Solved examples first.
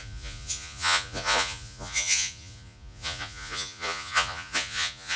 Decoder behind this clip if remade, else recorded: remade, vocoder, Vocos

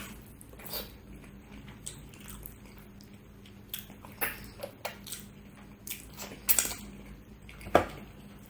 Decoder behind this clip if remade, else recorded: recorded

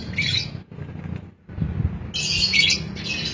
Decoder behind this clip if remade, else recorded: recorded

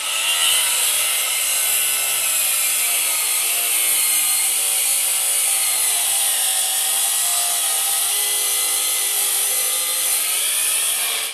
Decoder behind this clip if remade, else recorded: recorded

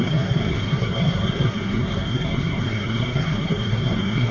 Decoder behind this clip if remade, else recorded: remade, codec, SNAC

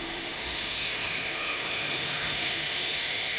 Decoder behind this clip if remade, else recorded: remade, autoencoder, DAC-VAE